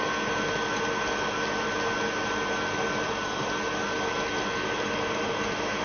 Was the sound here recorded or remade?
recorded